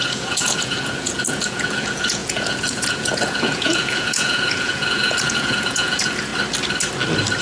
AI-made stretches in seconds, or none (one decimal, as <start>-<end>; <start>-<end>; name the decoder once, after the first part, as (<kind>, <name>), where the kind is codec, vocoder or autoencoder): 0.0-6.3 (vocoder, Vocos)